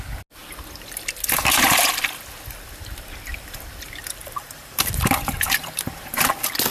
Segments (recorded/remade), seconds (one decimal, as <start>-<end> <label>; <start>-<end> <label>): 0.0-4.2 recorded; 4.2-6.3 remade; 6.3-6.7 recorded